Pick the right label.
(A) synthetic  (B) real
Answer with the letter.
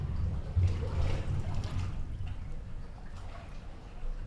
B